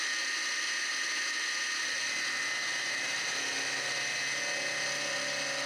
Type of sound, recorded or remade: recorded